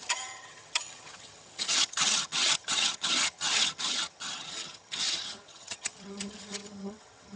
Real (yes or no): no